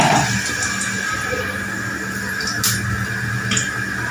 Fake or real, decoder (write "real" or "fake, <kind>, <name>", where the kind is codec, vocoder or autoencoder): real